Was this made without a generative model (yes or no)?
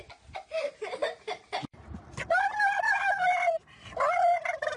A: yes